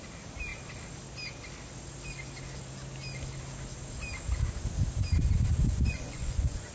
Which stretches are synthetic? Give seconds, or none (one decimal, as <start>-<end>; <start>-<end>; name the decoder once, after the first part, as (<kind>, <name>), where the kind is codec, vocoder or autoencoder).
5.5-6.7 (vocoder, Vocos)